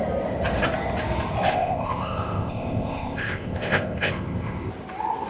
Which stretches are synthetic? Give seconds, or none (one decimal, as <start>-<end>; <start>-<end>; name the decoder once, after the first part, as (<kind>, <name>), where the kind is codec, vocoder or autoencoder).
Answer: 1.5-4.7 (codec, ZipCodec)